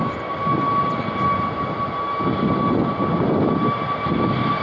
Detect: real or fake real